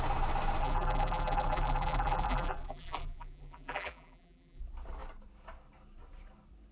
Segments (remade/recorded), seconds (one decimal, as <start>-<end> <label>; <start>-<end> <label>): 0.0-0.6 recorded; 0.6-4.6 remade; 4.6-6.7 recorded